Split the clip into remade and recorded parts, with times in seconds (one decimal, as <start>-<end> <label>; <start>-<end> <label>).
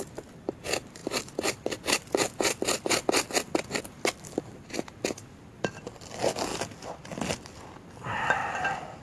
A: 0.0-9.0 recorded